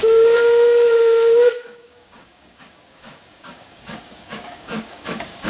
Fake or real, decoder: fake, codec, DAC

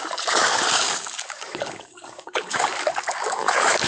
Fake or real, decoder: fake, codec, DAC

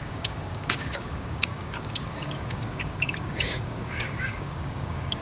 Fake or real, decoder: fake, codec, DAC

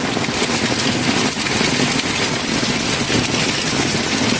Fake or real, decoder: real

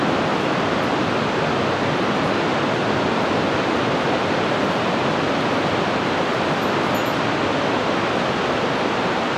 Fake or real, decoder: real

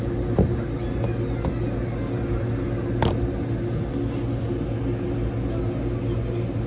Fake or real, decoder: real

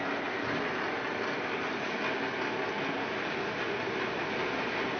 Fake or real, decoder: real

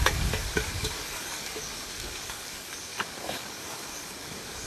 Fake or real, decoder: fake, codec, DAC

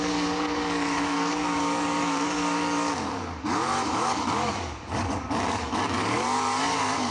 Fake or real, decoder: fake, codec, DAC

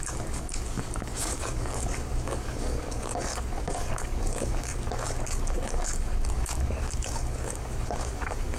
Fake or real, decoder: fake, codec, DAC